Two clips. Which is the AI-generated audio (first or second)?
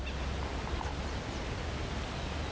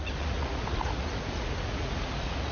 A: second